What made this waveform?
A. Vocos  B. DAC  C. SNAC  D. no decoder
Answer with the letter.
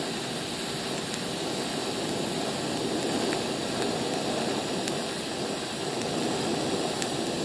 D